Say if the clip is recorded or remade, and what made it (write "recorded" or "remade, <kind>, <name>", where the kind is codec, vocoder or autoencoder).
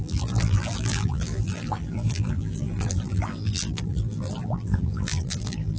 remade, vocoder, BigVGAN v2